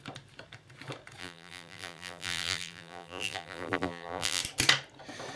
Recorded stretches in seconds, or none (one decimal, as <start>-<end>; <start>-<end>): 0.0-1.2; 4.4-5.4

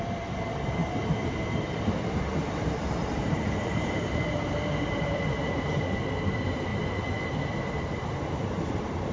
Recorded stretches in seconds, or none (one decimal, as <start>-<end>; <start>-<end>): 0.8-1.6

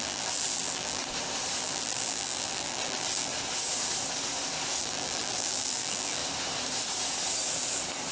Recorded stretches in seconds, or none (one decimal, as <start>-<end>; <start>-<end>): 1.0-1.6; 3.3-4.8; 6.2-8.1

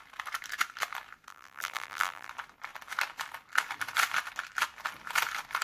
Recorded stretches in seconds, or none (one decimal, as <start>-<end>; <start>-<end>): 0.0-1.3; 2.3-5.6

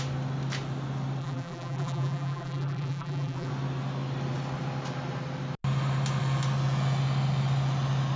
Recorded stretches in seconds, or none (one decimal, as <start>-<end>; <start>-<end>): 0.0-1.2; 3.5-8.2

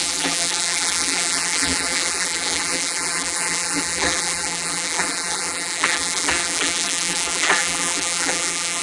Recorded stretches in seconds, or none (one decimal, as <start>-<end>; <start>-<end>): none

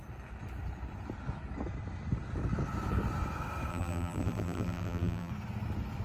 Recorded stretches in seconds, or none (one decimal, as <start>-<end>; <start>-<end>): 0.0-3.7; 5.3-6.0